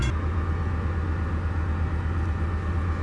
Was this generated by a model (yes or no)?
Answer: no